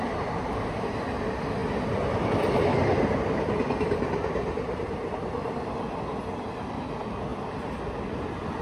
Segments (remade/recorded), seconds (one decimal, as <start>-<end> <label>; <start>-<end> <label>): 0.0-8.6 recorded